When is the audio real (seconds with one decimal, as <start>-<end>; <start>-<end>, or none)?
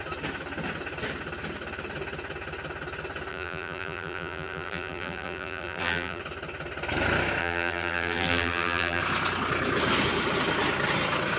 0.0-3.3; 6.2-7.4; 9.0-11.4